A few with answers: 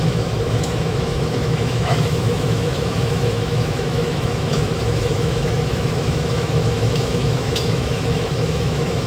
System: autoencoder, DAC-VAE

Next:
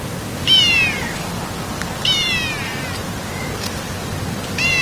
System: none